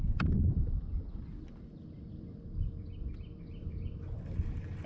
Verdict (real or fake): fake